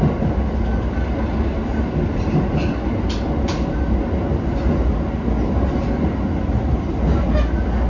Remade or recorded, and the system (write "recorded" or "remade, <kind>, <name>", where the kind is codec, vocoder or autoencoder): recorded